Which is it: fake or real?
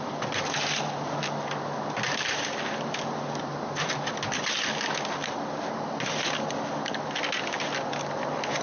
real